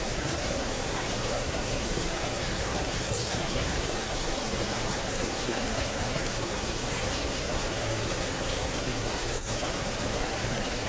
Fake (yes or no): yes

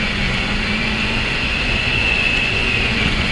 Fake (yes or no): yes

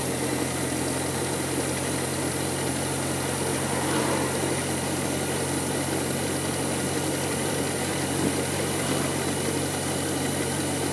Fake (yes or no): no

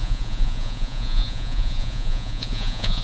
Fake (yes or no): yes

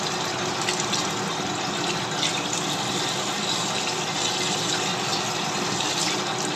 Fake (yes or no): no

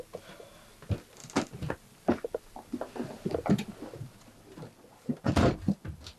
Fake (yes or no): no